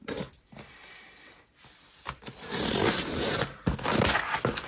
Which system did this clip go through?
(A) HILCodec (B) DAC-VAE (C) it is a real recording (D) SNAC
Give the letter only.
C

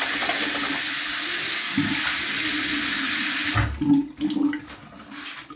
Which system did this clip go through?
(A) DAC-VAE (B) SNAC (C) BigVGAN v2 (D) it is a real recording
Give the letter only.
D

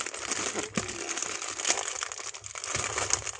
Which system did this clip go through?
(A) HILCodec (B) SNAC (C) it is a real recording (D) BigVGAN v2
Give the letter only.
C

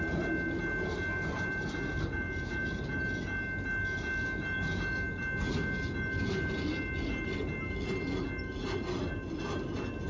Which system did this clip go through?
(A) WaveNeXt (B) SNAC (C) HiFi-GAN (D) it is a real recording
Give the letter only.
D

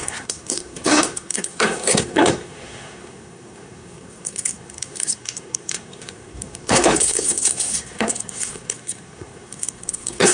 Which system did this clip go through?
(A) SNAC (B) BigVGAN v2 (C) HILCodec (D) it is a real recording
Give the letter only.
A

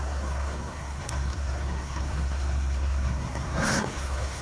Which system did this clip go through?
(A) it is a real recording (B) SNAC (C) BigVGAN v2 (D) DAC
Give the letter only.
B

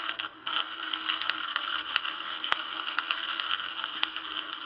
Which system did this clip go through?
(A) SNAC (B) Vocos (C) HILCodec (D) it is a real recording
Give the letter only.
A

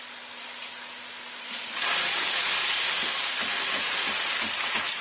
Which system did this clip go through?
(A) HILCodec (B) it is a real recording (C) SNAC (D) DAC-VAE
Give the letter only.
B